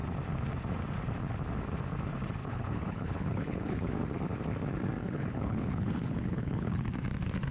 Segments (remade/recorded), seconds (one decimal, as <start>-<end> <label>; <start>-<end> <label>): 0.0-2.4 recorded; 2.4-3.9 remade; 3.9-5.0 recorded; 5.0-6.8 remade; 6.8-7.5 recorded

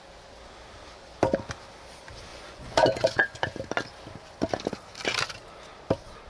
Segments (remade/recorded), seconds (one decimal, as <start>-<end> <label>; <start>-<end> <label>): 0.0-2.3 recorded; 2.3-3.6 remade; 3.6-6.3 recorded

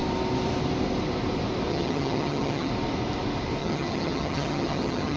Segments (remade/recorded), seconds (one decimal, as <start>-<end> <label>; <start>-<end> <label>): 0.0-1.7 recorded; 1.7-2.7 remade; 2.7-3.6 recorded; 3.6-5.2 remade

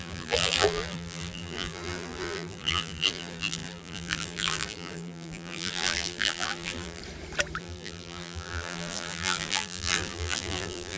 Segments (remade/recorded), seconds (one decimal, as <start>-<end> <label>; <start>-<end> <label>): 0.0-7.0 remade; 7.0-7.6 recorded; 7.6-11.0 remade

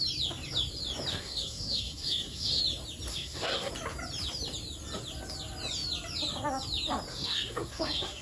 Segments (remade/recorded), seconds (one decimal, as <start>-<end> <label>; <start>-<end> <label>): 0.0-1.1 recorded; 1.1-2.6 remade; 2.6-3.1 recorded; 3.1-3.7 remade; 3.7-7.1 recorded; 7.1-8.2 remade